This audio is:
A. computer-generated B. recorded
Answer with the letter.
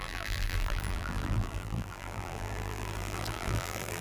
A